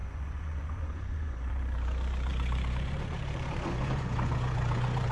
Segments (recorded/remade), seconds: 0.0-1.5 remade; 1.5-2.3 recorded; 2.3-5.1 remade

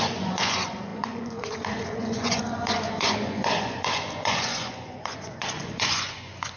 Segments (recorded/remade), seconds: 0.0-6.6 remade

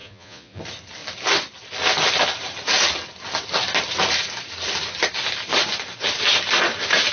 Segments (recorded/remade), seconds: 0.0-0.6 remade; 0.6-7.1 recorded

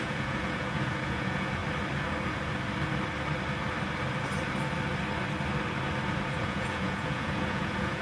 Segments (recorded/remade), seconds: 0.0-1.6 remade; 1.6-6.4 recorded; 6.4-8.0 remade

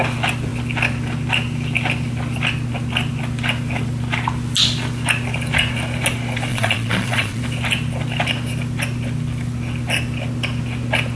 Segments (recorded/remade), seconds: 0.0-6.5 recorded; 6.5-7.4 remade; 7.4-11.2 recorded

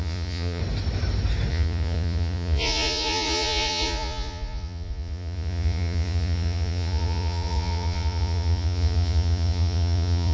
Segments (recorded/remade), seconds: 0.0-0.6 remade; 0.6-1.5 recorded; 1.5-10.3 remade

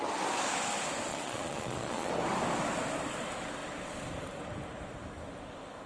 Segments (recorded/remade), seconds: 0.0-1.1 recorded; 1.1-2.1 remade; 2.1-5.9 recorded

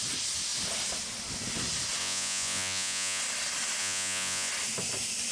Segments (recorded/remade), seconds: 0.0-2.0 recorded; 2.0-3.2 remade; 3.2-3.8 recorded; 3.8-4.5 remade; 4.5-5.3 recorded